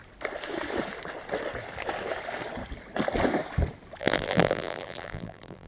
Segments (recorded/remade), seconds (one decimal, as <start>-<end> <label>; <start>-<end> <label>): 0.0-4.0 recorded; 4.0-5.7 remade